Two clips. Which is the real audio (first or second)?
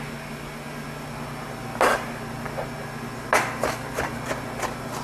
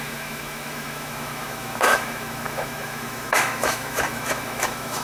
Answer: first